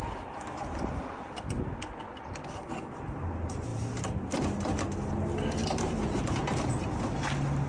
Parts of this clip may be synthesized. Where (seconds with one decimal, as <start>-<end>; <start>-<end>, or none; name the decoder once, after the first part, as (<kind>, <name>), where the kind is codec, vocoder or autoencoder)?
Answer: none